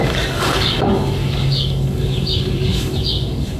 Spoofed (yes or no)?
yes